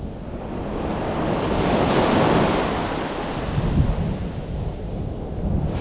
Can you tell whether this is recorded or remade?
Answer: recorded